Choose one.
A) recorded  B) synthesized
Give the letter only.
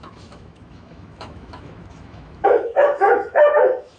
B